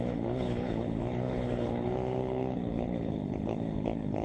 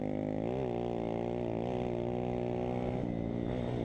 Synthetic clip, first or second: first